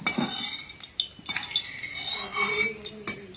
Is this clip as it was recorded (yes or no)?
yes